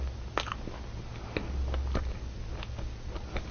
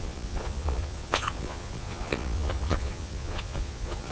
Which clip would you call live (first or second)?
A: first